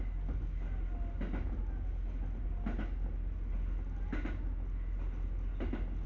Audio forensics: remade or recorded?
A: recorded